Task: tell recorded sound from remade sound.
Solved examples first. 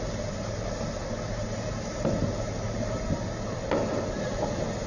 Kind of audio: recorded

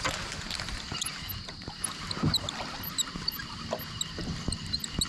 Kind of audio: recorded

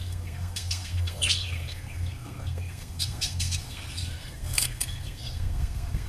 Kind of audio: remade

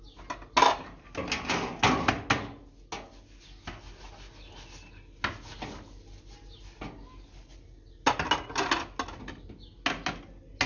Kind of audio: recorded